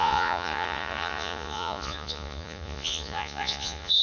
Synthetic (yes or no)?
yes